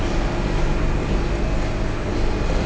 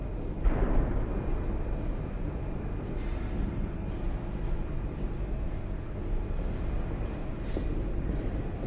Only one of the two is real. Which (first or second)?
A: first